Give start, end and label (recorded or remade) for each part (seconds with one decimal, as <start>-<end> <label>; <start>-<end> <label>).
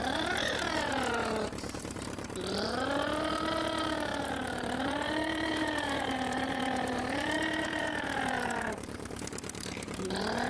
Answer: 0.0-4.1 recorded; 4.1-8.2 remade; 8.2-10.5 recorded